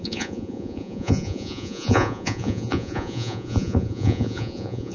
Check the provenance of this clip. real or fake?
fake